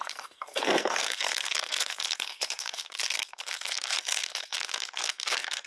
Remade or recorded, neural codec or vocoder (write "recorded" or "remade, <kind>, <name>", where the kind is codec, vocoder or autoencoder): remade, codec, SNAC